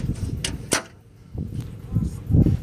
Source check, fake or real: real